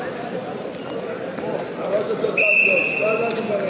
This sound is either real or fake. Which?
real